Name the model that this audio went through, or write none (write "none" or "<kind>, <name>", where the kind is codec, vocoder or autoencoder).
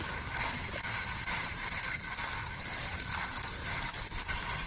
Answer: none